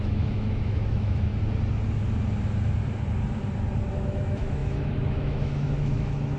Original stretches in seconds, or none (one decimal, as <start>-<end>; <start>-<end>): 1.3-3.9